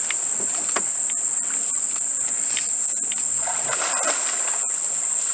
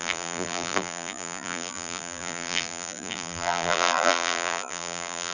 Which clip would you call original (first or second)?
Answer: first